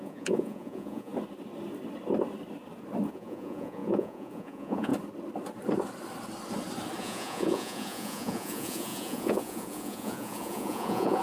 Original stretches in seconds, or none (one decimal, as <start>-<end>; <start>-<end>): 1.1-3.1; 4.9-7.0

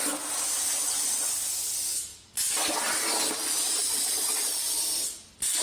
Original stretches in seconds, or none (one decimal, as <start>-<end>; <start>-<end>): 0.0-5.6

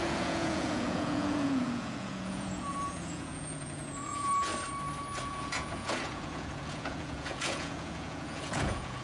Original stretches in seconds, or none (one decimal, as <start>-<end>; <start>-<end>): 4.5-5.2

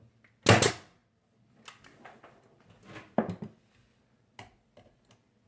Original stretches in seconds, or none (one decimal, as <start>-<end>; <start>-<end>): 0.0-5.5

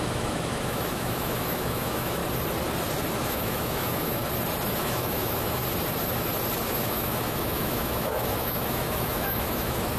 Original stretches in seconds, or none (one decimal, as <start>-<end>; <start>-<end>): 2.2-3.2; 4.2-4.8; 5.6-6.7

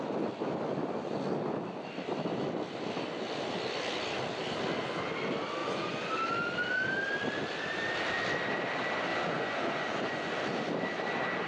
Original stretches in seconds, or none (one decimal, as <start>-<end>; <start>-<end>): 0.0-5.6; 6.1-9.1; 10.3-11.5

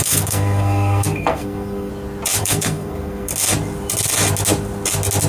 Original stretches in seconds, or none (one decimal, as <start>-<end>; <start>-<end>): 1.9-2.4; 3.3-5.3

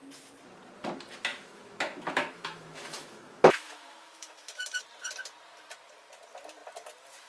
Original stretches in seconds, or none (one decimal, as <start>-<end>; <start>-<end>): 0.0-1.3; 4.8-7.3